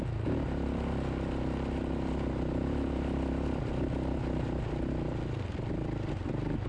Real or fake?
real